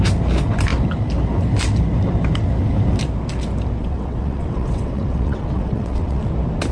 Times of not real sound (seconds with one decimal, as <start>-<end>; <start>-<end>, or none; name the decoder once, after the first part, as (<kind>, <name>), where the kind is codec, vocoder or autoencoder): 3.8-6.2 (vocoder, WaveNeXt)